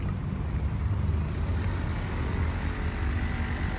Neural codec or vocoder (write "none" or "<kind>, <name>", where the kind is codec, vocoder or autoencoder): none